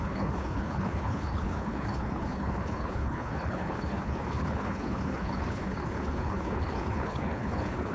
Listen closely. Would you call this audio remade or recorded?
remade